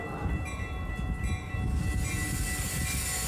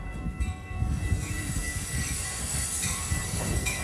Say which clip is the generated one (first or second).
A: second